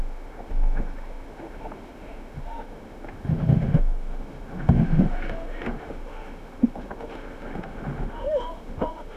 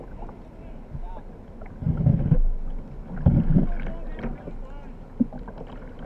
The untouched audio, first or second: second